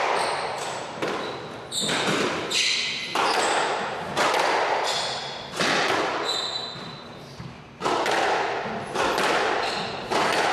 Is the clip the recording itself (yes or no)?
yes